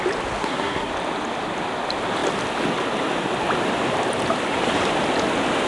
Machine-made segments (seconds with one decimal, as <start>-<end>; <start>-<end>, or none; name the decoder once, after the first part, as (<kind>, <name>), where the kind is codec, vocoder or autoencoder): 0.4-0.9 (codec, SNAC)